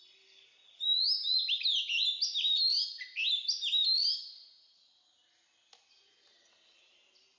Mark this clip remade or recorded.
recorded